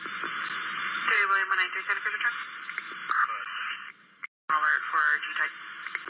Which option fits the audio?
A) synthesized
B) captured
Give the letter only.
B